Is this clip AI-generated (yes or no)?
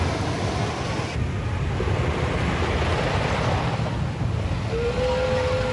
no